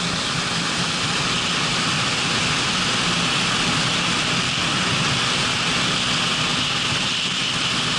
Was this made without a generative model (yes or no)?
yes